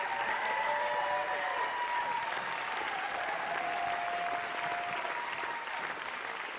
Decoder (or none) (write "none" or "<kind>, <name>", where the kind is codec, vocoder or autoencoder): none